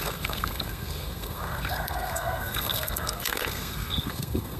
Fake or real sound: fake